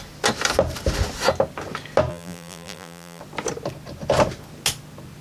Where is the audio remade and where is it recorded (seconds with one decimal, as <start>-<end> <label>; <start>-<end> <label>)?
0.0-2.1 recorded; 2.1-3.2 remade; 3.2-5.2 recorded